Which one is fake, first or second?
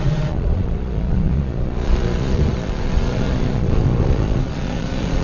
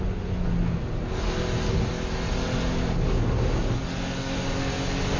first